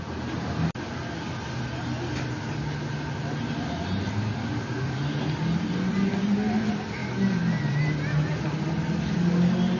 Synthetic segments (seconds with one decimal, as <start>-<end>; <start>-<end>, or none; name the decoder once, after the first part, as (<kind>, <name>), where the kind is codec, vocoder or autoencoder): 4.4-5.0 (codec, DAC)